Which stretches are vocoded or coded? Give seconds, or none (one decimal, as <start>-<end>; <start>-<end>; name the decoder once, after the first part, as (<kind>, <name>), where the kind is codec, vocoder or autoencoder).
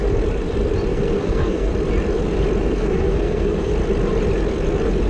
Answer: 0.9-1.7 (codec, SNAC); 2.6-3.7